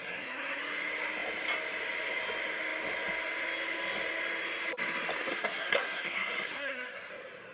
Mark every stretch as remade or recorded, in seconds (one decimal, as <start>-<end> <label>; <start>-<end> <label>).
0.0-0.6 remade; 0.6-5.3 recorded; 5.3-7.1 remade; 7.1-7.5 recorded